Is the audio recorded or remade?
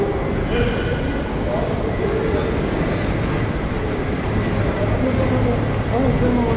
recorded